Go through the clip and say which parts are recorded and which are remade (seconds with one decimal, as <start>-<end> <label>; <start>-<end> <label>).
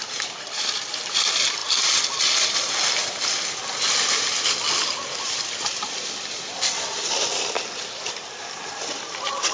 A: 0.0-1.6 remade; 1.6-2.2 recorded; 2.2-3.0 remade; 3.0-4.2 recorded; 4.2-9.5 remade